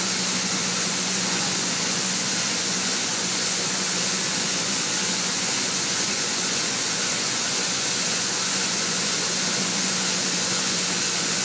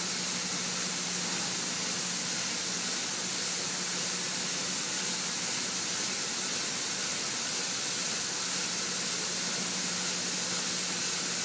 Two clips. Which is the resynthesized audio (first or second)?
first